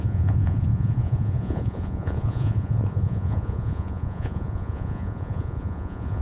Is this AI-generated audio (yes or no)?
yes